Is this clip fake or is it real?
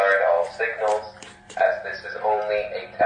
fake